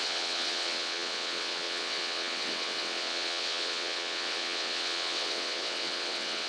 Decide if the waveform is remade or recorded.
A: remade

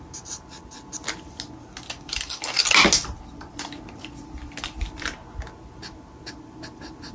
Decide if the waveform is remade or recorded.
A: recorded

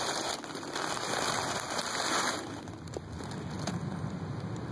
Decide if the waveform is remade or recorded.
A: recorded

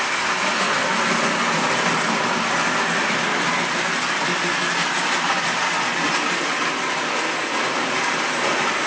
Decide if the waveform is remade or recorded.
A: recorded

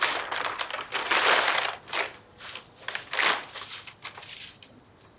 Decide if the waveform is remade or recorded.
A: recorded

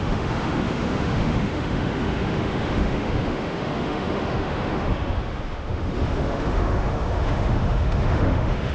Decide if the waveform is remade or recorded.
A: remade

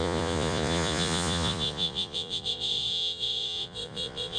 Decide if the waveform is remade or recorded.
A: remade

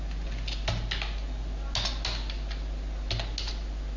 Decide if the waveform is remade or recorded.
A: recorded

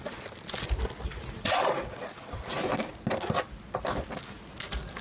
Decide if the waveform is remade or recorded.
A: recorded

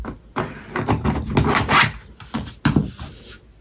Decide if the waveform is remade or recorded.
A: recorded